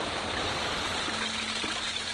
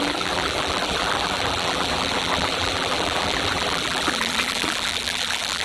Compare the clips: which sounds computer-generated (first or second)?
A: second